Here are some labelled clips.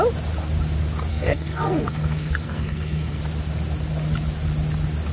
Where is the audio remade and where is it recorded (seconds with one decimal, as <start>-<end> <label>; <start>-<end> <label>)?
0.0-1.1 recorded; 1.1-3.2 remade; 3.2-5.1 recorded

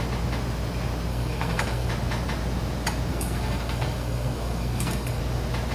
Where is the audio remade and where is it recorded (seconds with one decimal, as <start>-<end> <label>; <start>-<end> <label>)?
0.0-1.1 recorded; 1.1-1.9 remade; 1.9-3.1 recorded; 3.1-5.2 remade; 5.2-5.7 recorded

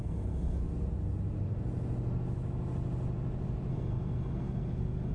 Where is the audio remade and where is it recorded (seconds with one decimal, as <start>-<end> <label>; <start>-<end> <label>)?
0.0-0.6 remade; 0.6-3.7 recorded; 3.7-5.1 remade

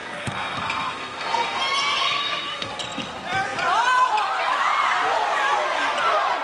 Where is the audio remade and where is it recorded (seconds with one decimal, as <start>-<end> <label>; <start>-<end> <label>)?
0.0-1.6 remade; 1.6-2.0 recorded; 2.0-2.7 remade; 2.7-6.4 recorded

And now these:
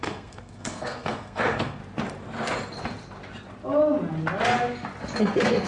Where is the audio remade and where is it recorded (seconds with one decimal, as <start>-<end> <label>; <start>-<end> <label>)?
0.0-1.8 remade; 1.8-5.2 recorded; 5.2-5.7 remade

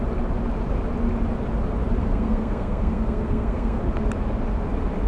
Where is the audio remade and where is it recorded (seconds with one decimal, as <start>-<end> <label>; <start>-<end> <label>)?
0.0-2.0 recorded; 2.0-3.8 remade; 3.8-5.1 recorded

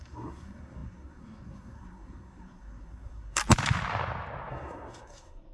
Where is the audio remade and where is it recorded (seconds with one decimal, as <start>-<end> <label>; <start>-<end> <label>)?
0.0-3.4 remade; 3.4-4.5 recorded; 4.5-5.5 remade

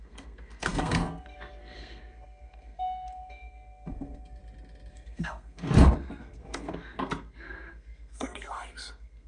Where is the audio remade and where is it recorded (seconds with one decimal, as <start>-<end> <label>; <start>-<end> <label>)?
0.0-4.4 remade; 4.4-4.9 recorded; 4.9-9.3 remade